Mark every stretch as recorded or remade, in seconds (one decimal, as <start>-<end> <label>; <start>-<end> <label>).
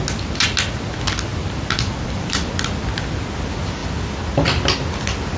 0.0-1.3 recorded; 1.3-2.5 remade; 2.5-3.8 recorded; 3.8-5.0 remade; 5.0-5.4 recorded